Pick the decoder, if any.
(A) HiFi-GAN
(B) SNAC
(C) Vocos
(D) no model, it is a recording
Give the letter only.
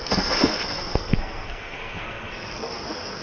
B